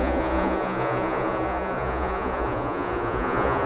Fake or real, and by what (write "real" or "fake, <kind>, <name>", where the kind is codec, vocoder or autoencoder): fake, vocoder, Vocos